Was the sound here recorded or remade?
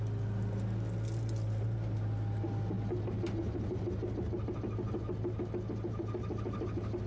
recorded